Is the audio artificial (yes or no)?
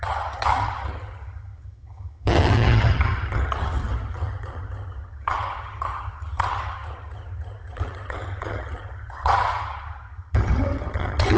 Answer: yes